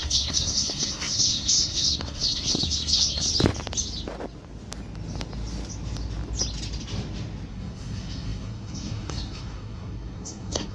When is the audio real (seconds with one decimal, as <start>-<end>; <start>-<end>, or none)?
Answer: 3.3-7.5